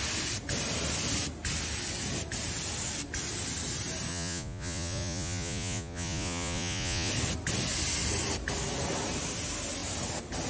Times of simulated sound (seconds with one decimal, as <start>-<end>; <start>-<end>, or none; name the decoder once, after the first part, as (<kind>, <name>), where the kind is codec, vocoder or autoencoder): 4.1-7.1 (vocoder, Vocos)